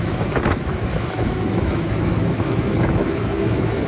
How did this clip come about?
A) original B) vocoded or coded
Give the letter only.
B